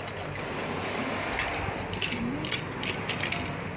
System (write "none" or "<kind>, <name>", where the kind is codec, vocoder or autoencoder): none